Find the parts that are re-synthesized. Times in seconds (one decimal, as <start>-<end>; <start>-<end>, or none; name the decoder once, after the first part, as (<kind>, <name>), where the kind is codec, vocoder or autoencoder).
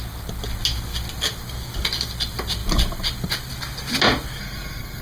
4.4-5.0 (codec, SNAC)